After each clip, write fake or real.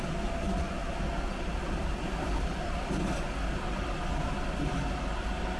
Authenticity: real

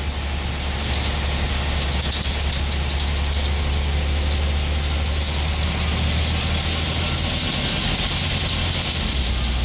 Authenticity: real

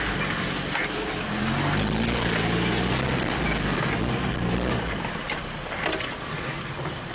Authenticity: real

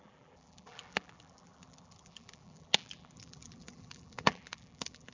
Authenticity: fake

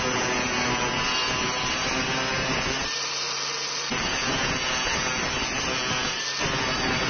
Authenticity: real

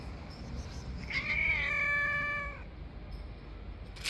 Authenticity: real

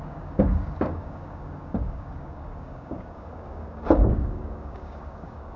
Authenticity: fake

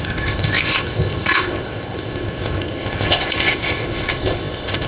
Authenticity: fake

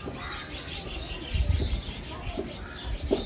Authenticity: real